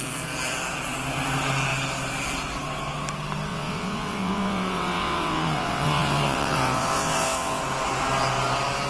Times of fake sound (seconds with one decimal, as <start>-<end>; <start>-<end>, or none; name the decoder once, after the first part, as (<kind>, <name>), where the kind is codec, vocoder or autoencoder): 3.5-7.6 (vocoder, WaveNeXt)

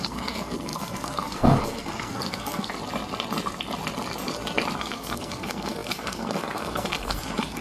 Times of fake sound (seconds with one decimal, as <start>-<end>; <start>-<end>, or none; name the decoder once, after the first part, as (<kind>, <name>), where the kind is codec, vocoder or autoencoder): 0.0-2.7 (codec, SNAC); 4.8-7.6

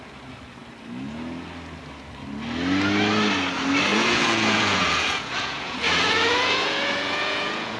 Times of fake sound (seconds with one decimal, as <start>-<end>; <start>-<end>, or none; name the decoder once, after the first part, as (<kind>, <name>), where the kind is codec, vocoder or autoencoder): 3.9-7.8 (vocoder, Vocos)

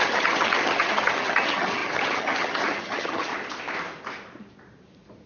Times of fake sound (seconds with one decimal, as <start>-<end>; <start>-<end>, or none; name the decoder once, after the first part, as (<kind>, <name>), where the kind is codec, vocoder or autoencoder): 0.0-3.3 (vocoder, HiFi-GAN)